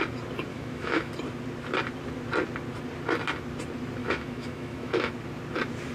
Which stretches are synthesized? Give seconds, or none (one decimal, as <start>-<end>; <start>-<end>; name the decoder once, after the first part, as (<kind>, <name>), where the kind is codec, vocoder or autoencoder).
0.5-1.1 (autoencoder, DAC-VAE); 4.0-5.1